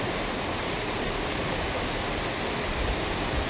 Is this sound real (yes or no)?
yes